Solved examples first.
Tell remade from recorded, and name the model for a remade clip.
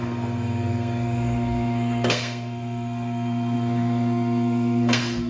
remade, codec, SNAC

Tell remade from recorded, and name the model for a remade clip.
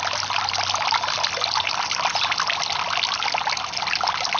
recorded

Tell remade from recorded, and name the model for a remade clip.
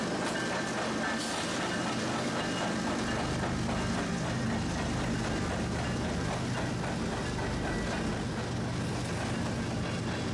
recorded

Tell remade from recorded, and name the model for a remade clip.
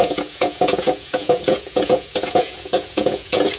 remade, vocoder, Vocos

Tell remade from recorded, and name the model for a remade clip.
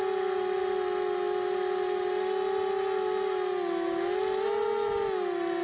recorded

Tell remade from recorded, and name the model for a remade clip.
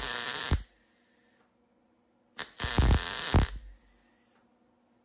recorded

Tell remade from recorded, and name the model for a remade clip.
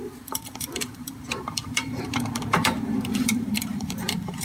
remade, vocoder, BigVGAN v2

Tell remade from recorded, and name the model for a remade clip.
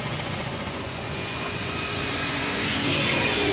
remade, vocoder, Vocos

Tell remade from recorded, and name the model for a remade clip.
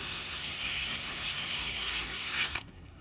remade, codec, SNAC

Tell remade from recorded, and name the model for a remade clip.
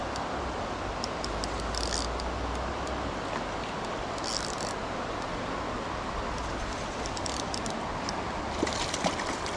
recorded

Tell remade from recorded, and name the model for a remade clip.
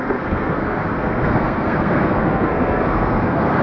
remade, codec, SNAC